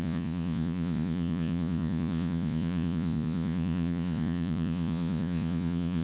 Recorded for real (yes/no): no